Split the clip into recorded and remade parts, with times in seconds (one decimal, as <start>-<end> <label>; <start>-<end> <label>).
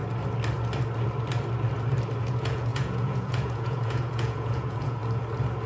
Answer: 0.0-2.2 recorded; 2.2-5.0 remade; 5.0-5.7 recorded